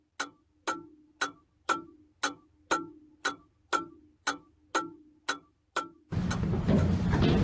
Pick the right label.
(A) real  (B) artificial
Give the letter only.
A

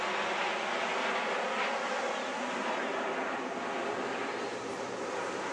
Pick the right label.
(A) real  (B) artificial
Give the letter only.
A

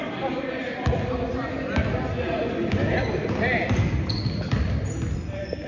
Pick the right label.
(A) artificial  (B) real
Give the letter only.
A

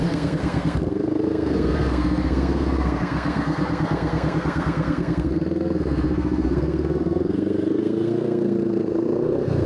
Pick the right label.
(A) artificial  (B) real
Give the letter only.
A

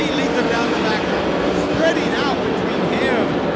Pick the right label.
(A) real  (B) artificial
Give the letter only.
A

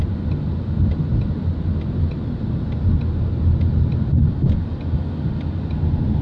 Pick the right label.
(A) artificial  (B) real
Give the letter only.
B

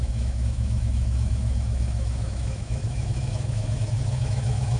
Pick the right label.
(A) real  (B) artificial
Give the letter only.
B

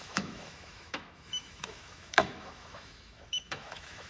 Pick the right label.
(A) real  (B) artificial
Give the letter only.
B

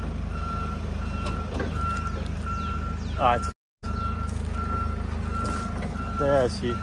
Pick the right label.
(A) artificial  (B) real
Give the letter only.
B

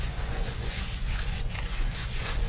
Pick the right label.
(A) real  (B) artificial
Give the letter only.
B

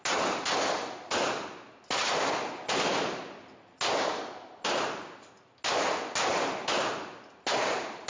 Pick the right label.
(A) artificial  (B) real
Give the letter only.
B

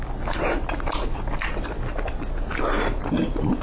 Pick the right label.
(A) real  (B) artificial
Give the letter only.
A